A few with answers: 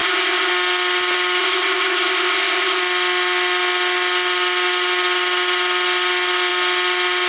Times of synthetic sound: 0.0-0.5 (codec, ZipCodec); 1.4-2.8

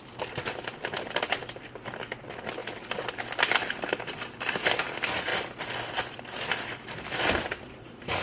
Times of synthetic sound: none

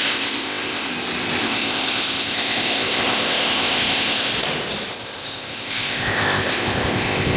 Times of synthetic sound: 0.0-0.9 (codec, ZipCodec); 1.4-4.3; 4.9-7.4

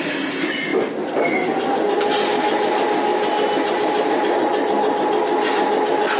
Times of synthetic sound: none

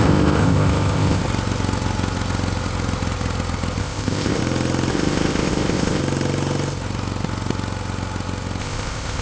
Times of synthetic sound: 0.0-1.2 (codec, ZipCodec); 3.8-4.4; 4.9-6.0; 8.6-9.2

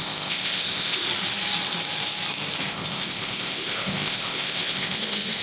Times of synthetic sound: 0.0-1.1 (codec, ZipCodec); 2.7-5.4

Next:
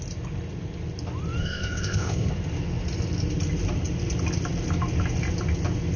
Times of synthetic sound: 1.4-2.3 (codec, ZipCodec)

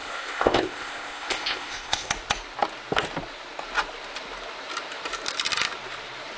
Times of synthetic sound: 0.0-2.1 (codec, ZipCodec)